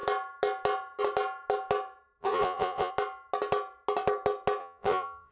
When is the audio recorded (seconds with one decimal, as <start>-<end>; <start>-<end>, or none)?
0.0-2.2; 2.9-4.6